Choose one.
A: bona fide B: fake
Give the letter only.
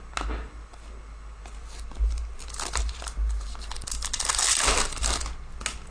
A